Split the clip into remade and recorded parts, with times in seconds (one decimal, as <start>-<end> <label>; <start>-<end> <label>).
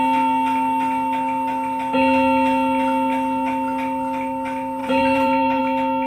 0.0-4.8 recorded; 4.8-5.6 remade; 5.6-6.1 recorded